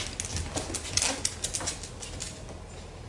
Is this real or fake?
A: real